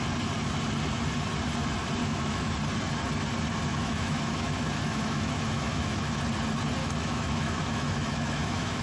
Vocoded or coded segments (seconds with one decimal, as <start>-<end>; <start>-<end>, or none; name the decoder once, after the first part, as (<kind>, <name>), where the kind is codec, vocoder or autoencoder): 2.0-2.5 (autoencoder, DAC-VAE); 3.7-6.2; 6.8-8.8